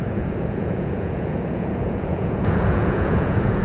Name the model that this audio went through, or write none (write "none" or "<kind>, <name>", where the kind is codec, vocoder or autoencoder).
vocoder, Vocos